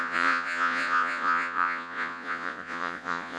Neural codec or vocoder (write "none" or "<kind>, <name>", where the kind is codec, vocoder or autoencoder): vocoder, Vocos